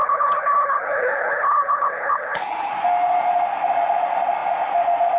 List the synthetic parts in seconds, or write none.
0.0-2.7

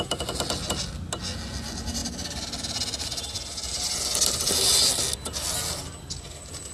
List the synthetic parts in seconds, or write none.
none